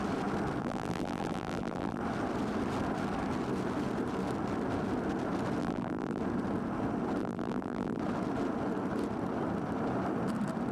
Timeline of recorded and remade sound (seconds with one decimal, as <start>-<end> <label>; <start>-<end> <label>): 0.0-0.6 recorded; 0.6-2.0 remade; 2.0-5.6 recorded; 5.6-6.2 remade; 6.2-7.2 recorded; 7.2-8.0 remade; 8.0-10.7 recorded